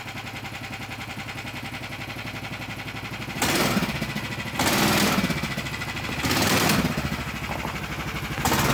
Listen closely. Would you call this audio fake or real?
real